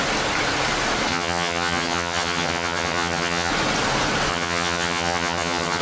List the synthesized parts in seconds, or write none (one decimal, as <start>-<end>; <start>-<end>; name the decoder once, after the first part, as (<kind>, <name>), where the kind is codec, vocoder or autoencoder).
1.1-3.5 (vocoder, HiFi-GAN); 4.3-5.8